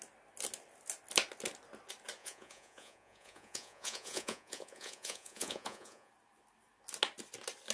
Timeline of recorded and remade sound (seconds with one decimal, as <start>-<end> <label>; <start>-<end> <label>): 0.0-2.2 recorded; 2.2-6.1 remade; 6.1-7.7 recorded